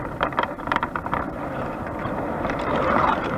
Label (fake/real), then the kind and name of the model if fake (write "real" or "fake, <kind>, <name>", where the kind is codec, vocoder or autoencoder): fake, vocoder, BigVGAN v2